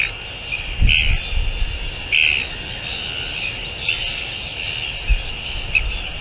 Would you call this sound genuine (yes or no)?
yes